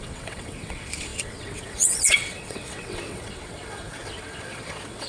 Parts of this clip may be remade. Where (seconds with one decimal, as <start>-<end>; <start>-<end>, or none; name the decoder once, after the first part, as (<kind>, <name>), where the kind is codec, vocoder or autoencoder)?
0.0-5.1 (vocoder, WaveNeXt)